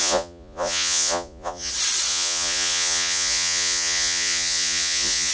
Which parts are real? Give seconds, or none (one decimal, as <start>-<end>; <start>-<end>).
1.7-2.1